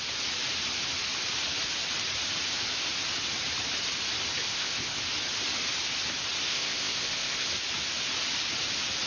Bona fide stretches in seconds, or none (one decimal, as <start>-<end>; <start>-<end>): 0.0-4.4; 5.0-6.5; 7.5-9.1